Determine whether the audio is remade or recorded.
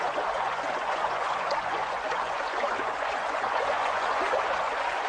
remade